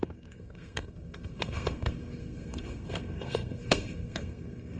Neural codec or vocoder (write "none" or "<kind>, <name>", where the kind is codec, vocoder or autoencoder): codec, SNAC